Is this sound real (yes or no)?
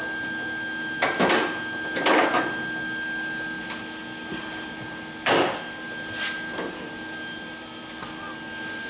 yes